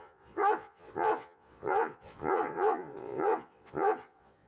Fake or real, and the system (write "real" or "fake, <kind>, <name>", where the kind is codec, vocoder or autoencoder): fake, vocoder, Vocos